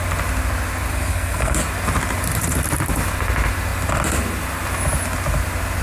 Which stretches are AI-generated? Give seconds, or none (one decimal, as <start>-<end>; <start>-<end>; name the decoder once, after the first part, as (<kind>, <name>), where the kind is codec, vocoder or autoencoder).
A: 0.9-1.6 (codec, SNAC)